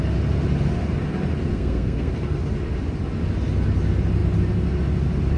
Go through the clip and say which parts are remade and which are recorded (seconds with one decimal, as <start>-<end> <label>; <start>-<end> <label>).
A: 0.0-1.5 recorded; 1.5-2.1 remade; 2.1-5.4 recorded